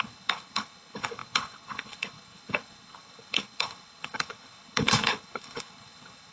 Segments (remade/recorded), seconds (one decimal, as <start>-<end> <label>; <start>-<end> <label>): 0.0-6.3 remade